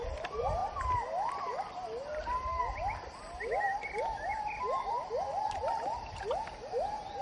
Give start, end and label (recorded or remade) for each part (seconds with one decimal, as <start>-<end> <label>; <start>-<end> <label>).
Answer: 0.0-7.2 recorded